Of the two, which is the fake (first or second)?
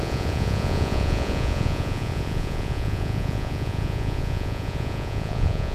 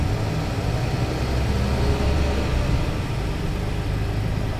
first